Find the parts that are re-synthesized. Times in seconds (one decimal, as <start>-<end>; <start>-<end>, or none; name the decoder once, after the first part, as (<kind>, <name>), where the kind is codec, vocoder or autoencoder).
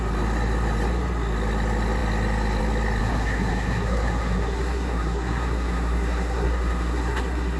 3.0-7.6 (codec, SNAC)